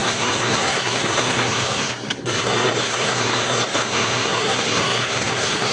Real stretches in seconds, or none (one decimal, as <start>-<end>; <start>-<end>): none